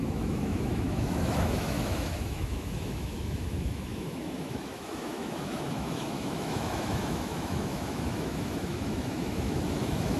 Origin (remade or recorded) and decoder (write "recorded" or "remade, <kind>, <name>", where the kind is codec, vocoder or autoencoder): remade, autoencoder, DAC-VAE